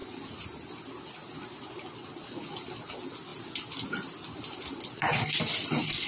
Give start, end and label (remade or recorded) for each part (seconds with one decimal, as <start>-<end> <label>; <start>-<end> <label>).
0.0-6.1 recorded